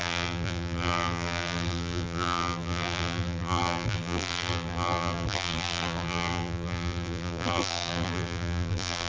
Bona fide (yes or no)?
no